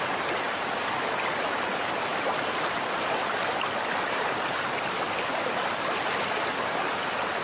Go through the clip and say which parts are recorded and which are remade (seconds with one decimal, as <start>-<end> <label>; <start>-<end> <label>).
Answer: 0.0-7.4 recorded

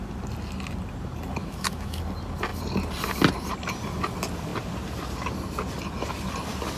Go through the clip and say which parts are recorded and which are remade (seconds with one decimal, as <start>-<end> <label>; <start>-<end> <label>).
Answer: 0.0-1.4 recorded; 1.4-2.0 remade; 2.0-6.8 recorded

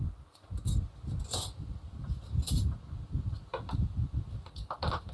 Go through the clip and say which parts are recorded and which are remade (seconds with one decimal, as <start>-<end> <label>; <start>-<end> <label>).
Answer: 0.0-5.1 recorded

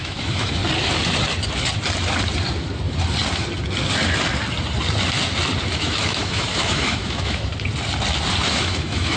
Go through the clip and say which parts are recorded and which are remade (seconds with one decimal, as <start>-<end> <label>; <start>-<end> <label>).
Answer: 0.0-0.6 remade; 0.6-5.8 recorded; 5.8-7.5 remade; 7.5-8.5 recorded; 8.5-9.2 remade

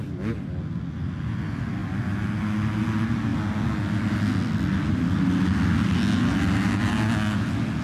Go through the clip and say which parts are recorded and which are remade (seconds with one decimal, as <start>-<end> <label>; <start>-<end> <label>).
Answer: 0.0-7.8 recorded

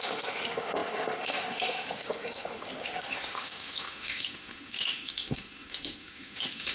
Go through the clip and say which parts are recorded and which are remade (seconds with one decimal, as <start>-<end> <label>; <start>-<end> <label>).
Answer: 0.0-6.7 remade